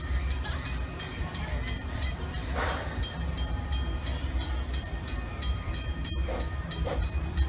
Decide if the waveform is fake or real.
fake